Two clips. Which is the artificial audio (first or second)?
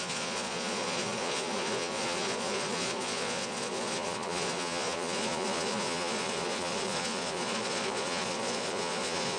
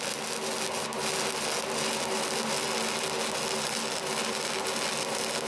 first